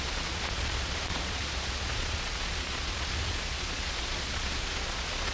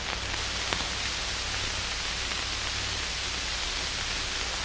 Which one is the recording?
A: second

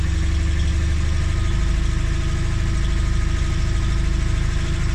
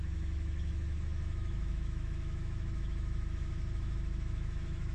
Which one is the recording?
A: first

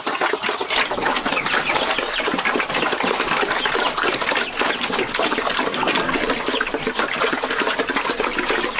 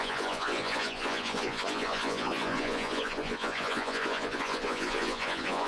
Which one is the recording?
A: first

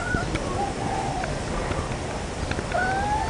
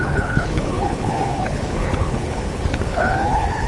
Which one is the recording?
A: first